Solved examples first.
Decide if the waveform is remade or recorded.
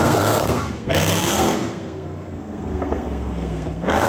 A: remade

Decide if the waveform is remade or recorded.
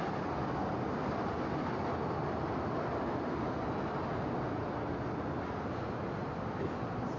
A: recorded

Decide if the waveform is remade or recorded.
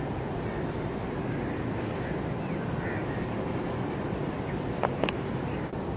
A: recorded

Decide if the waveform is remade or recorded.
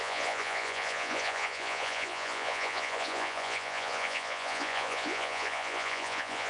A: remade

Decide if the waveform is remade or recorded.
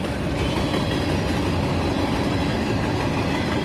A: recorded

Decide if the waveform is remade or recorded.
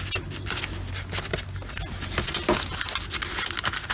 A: recorded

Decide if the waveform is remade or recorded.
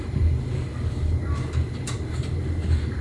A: recorded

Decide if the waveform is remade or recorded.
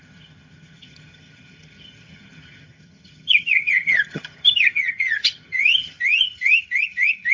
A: remade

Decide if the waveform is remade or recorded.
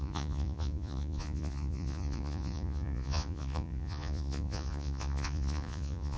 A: remade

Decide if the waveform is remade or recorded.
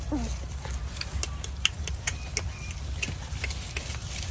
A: recorded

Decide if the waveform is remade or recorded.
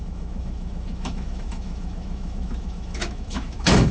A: remade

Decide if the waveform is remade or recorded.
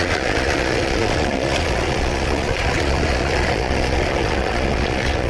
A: remade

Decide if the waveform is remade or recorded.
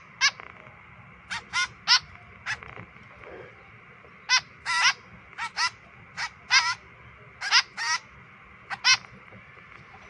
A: recorded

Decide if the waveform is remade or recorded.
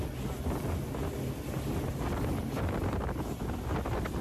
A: recorded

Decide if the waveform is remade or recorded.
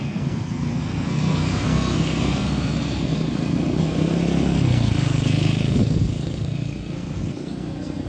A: remade